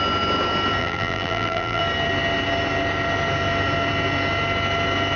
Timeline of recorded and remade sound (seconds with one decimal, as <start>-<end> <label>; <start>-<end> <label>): 0.0-0.8 recorded; 0.8-1.8 remade; 1.8-5.2 recorded